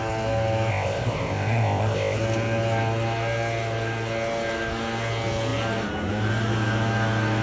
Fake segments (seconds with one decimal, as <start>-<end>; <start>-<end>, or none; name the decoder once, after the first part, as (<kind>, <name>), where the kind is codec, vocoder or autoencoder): 0.7-2.2 (codec, ZipCodec)